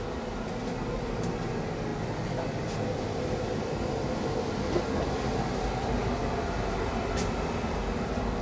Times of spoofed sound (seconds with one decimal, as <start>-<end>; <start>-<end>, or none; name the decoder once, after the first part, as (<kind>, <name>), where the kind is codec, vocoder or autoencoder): none